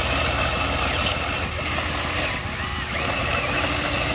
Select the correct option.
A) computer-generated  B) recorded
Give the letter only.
B